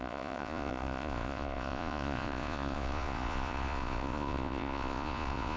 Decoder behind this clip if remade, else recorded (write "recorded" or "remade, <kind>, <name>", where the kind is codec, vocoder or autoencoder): remade, vocoder, Vocos